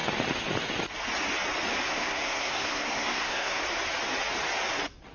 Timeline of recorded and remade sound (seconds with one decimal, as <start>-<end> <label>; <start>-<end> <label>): 0.0-1.9 recorded; 1.9-3.6 remade; 3.6-5.1 recorded